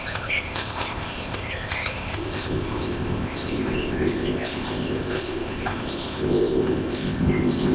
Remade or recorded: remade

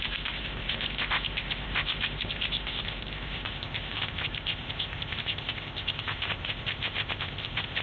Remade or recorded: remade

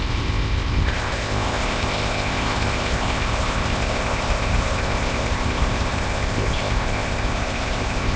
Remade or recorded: remade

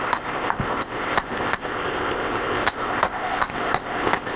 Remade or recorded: remade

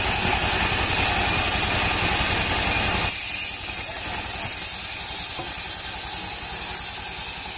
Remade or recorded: recorded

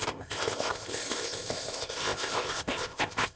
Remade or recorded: remade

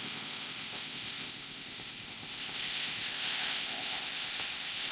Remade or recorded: remade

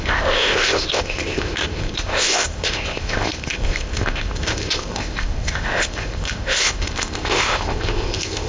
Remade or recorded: remade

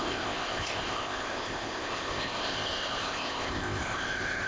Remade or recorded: remade